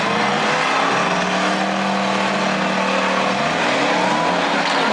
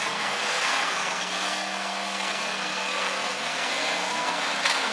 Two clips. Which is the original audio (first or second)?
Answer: first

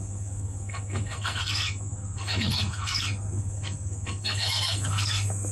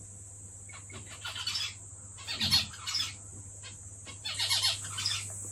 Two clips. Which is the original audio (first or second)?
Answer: second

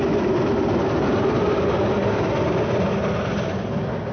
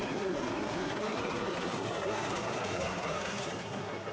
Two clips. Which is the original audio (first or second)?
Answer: first